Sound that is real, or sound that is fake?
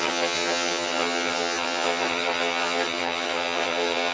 fake